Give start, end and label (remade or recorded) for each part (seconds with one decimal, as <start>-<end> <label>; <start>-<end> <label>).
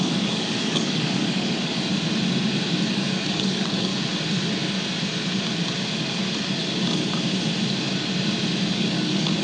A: 0.0-1.9 remade; 1.9-2.9 recorded; 2.9-3.9 remade; 3.9-8.7 recorded; 8.7-9.4 remade